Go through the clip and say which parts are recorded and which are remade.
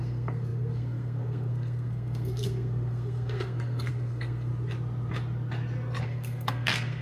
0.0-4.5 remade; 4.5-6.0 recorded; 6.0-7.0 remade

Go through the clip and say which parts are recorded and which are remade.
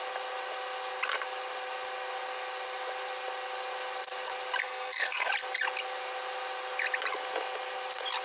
0.0-4.6 recorded; 4.6-5.3 remade; 5.3-8.2 recorded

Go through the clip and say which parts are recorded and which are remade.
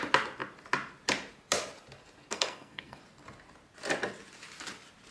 0.0-2.3 recorded; 2.3-3.0 remade; 3.0-5.1 recorded